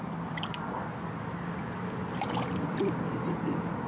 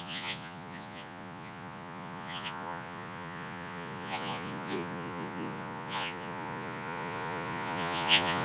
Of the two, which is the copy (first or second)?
second